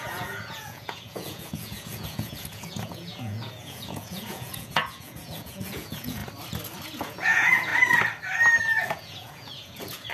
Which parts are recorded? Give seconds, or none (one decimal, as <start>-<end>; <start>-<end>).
6.2-7.0; 7.7-8.6